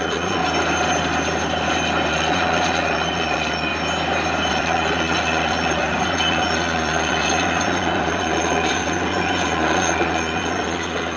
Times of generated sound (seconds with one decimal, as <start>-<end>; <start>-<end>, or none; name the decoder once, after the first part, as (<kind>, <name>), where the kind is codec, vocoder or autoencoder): 0.0-0.4 (vocoder, Vocos); 2.1-3.7; 4.5-11.2